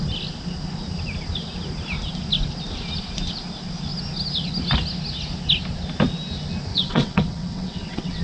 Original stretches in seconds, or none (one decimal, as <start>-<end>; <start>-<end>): 0.0-6.7